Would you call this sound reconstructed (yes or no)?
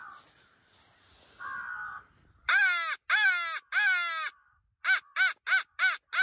no